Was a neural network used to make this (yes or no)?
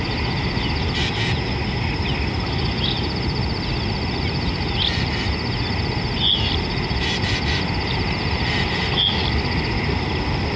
no